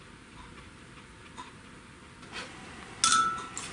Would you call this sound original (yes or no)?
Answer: yes